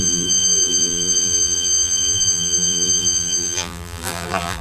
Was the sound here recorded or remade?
remade